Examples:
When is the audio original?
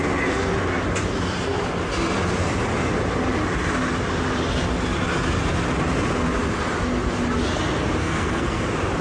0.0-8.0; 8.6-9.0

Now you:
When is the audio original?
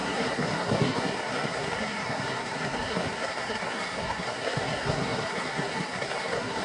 none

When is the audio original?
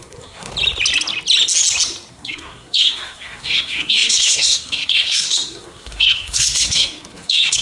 0.5-2.1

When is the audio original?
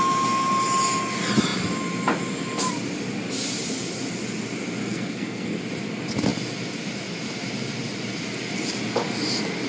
0.0-4.8; 5.6-9.7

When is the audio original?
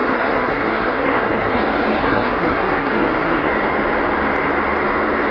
1.6-2.0; 3.5-5.3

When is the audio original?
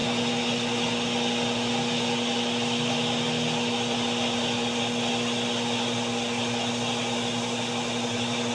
0.0-8.5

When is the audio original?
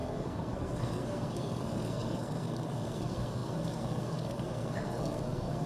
none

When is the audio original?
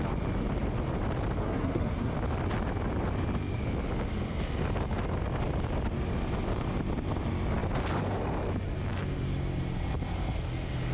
0.0-1.4; 2.1-10.9